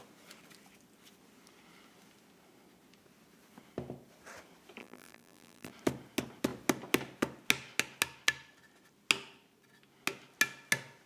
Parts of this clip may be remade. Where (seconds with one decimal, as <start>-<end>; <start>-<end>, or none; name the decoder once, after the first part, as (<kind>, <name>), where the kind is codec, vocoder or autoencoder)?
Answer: 4.8-5.7 (vocoder, BigVGAN v2)